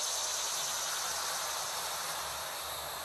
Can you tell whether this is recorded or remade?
remade